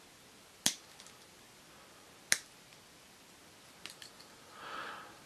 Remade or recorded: recorded